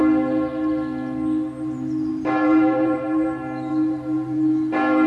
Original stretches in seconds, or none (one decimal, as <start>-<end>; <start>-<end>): 0.0-2.1